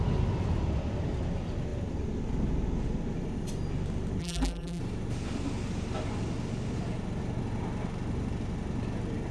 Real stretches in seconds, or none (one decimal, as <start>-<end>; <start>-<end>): 0.0-4.2; 4.8-9.3

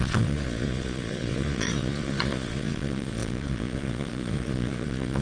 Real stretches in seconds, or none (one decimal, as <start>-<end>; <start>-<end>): none

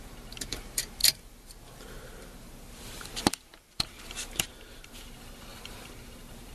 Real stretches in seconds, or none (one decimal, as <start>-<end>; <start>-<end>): 0.0-1.0; 4.9-5.5

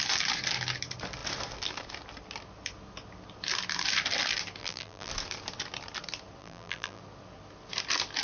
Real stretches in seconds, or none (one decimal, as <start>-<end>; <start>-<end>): 0.0-4.6; 5.1-6.4; 7.0-8.2